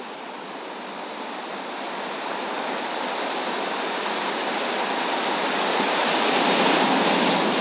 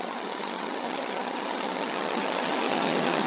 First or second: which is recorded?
first